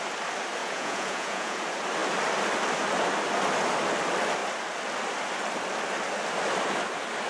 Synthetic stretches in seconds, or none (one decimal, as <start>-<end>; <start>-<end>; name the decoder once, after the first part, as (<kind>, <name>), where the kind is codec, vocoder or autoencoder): 0.6-1.6 (vocoder, Vocos)